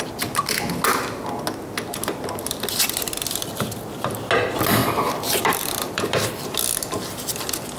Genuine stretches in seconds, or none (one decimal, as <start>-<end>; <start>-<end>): 0.0-4.8; 6.0-7.8